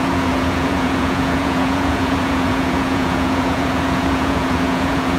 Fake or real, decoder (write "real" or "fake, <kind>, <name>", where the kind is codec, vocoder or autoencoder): fake, vocoder, Vocos